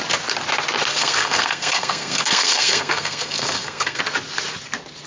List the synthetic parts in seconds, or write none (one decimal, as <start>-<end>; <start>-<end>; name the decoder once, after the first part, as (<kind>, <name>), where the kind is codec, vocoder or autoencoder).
0.9-4.0 (codec, SNAC)